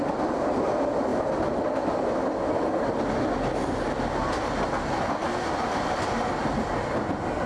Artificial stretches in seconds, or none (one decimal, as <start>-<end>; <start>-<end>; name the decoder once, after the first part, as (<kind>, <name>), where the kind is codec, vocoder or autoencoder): none